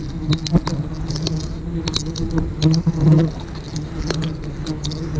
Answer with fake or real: real